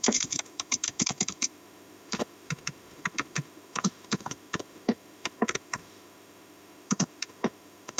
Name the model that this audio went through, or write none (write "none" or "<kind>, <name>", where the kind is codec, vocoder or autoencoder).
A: autoencoder, DAC-VAE